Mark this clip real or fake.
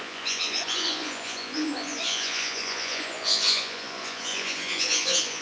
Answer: fake